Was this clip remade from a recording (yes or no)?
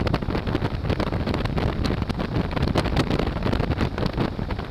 no